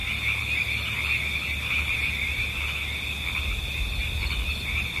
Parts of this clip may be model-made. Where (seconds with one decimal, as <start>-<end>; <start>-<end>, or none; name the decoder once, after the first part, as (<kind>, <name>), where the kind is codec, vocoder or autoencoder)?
none